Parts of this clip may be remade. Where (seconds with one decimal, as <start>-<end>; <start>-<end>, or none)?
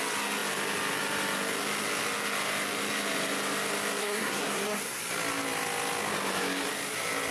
4.0-5.0